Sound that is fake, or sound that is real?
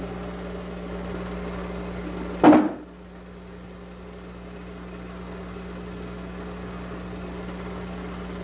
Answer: real